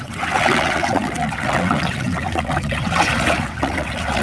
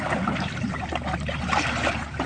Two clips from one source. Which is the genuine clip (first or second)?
second